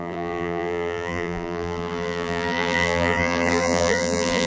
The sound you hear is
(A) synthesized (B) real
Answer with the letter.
A